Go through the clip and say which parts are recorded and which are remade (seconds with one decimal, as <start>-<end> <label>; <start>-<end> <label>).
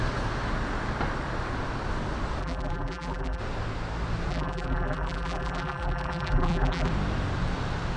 0.0-2.4 recorded; 2.4-3.4 remade; 3.4-4.3 recorded; 4.3-6.9 remade; 6.9-8.0 recorded